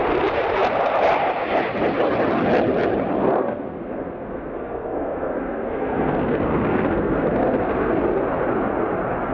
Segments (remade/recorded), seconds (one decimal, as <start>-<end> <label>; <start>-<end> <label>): 0.0-3.2 recorded; 3.2-8.0 remade; 8.0-9.3 recorded